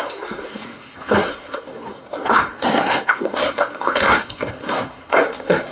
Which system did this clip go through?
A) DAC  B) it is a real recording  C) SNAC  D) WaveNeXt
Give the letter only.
C